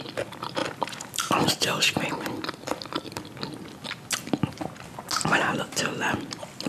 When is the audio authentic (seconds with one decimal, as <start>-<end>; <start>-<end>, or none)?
0.0-6.7